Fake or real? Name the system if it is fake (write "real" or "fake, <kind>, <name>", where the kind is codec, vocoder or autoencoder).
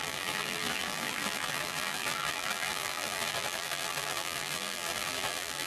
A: fake, vocoder, BigVGAN v2